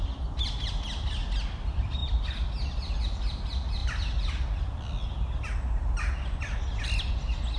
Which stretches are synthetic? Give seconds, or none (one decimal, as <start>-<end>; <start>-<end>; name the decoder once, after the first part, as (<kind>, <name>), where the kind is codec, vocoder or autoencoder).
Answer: none